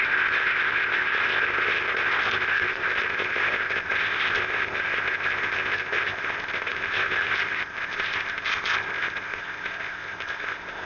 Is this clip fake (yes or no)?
yes